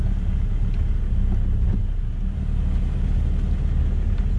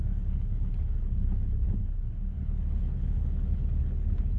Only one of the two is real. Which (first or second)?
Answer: first